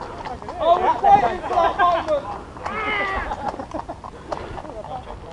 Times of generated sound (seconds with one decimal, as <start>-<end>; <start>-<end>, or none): none